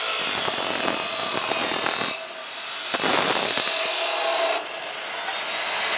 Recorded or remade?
recorded